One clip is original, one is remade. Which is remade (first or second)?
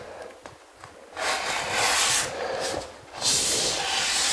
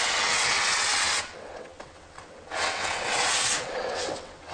second